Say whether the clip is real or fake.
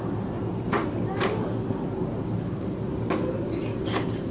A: real